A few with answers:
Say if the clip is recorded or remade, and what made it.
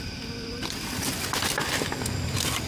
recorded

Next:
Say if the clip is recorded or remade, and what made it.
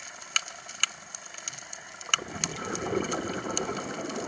recorded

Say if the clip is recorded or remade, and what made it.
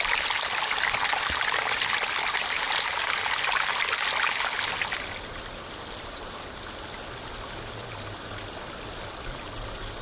recorded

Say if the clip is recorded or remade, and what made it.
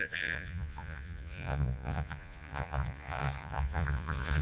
remade, vocoder, Vocos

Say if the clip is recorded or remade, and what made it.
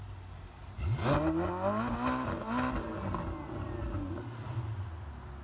recorded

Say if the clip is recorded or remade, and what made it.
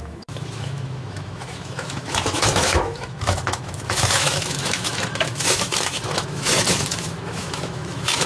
remade, autoencoder, DAC-VAE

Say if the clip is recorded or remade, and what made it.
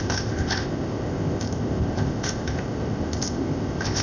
remade, codec, ZipCodec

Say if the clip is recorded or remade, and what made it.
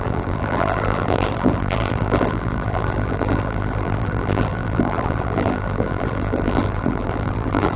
remade, vocoder, BigVGAN v2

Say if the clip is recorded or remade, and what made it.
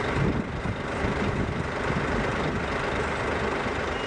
recorded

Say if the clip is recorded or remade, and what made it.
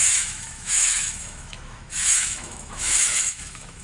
remade, autoencoder, DAC-VAE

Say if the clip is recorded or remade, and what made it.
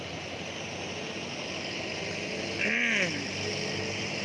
recorded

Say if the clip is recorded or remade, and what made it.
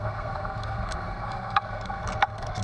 remade, codec, SNAC